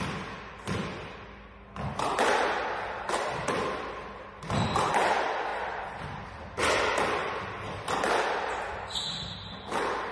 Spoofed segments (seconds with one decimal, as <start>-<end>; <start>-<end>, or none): none